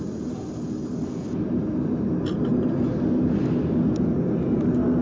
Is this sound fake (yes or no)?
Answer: no